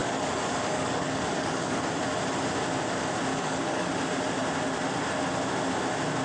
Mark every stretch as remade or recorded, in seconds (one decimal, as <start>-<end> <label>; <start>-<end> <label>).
0.0-1.8 remade; 1.8-3.3 recorded; 3.3-3.9 remade; 3.9-6.2 recorded